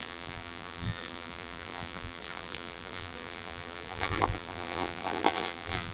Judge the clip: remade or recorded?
remade